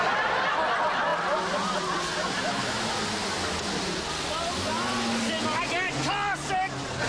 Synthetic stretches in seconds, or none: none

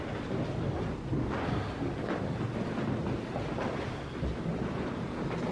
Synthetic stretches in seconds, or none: 0.0-5.5 (vocoder, BigVGAN v2)

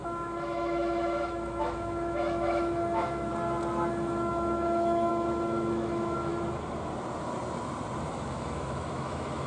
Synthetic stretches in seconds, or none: 0.0-3.3 (autoencoder, DAC-VAE); 3.9-6.3; 8.1-9.5

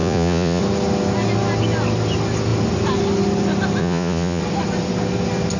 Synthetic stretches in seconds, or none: 0.0-0.6 (vocoder, Vocos); 3.8-4.4